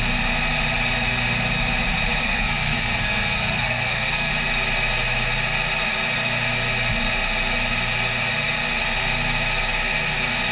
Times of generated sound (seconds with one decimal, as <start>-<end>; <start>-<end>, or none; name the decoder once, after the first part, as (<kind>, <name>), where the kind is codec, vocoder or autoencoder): 2.2-4.3 (codec, SNAC)